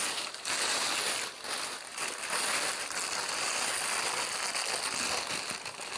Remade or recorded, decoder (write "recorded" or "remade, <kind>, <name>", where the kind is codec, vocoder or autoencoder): recorded